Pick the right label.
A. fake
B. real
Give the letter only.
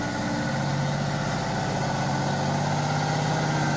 B